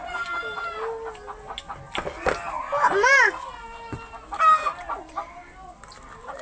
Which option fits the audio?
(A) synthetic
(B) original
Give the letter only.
B